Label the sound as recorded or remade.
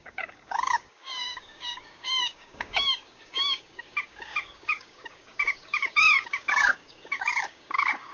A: remade